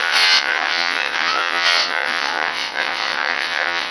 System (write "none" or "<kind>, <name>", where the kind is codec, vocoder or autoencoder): vocoder, WaveNeXt